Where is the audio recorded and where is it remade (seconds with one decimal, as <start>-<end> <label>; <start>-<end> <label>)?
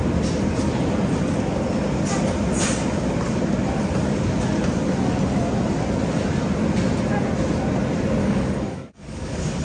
0.0-8.2 recorded; 8.2-9.6 remade